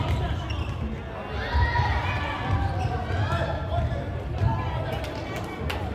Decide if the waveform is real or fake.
real